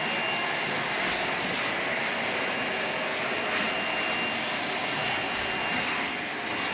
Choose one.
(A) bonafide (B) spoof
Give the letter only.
A